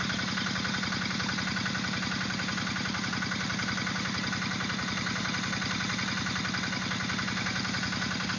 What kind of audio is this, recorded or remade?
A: recorded